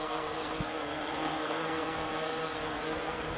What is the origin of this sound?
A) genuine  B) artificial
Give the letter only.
B